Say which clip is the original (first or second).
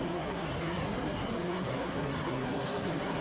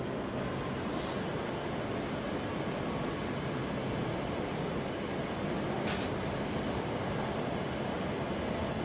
second